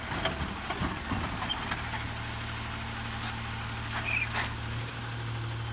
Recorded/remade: recorded